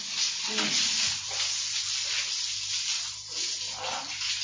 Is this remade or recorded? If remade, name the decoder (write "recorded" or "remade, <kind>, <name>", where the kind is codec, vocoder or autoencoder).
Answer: recorded